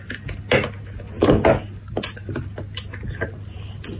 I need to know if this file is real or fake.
real